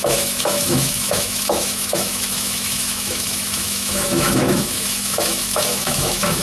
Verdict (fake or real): fake